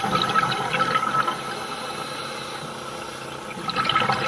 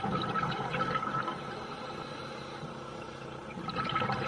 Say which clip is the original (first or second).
first